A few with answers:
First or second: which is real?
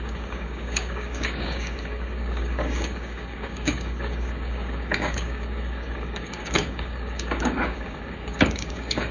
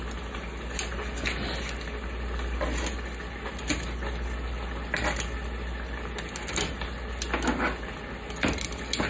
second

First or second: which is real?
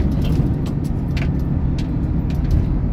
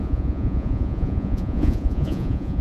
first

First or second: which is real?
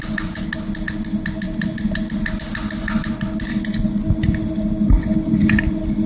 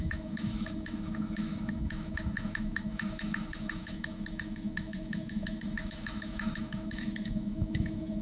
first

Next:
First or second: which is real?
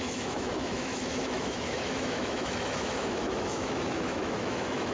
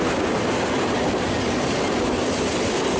second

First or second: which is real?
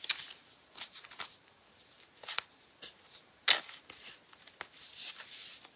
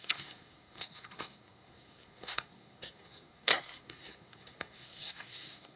first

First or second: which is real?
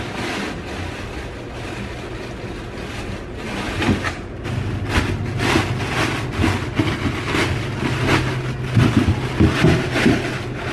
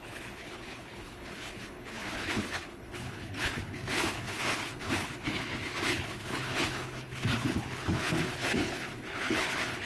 first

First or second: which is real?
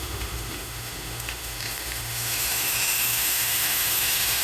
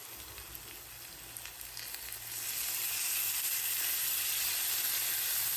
second